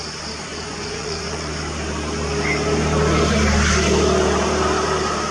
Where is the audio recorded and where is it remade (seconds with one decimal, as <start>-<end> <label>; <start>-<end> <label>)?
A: 0.0-0.5 recorded; 0.5-1.5 remade; 1.5-5.3 recorded